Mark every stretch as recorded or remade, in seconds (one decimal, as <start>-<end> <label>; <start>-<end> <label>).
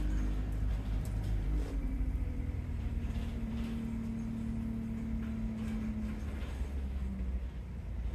0.0-0.7 recorded; 0.7-3.5 remade; 3.5-8.1 recorded